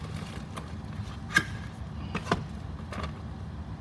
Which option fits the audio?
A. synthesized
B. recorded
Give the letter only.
B